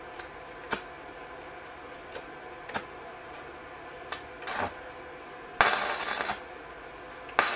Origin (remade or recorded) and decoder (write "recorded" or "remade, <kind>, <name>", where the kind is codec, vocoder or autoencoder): recorded